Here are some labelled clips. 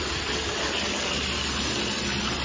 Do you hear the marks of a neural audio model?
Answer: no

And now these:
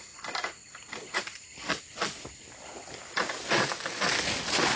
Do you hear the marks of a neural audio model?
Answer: no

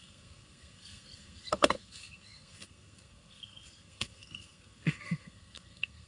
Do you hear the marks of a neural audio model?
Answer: yes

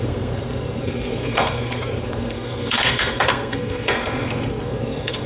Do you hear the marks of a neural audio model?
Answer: yes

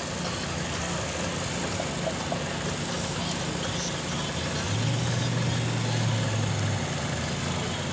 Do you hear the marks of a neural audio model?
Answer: no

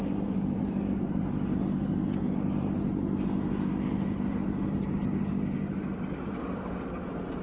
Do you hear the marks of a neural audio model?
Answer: no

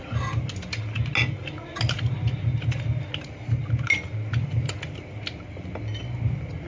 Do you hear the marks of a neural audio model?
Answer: no